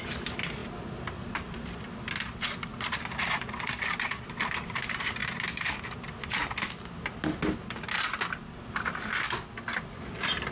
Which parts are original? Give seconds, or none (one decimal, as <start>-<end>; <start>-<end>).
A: 0.0-10.5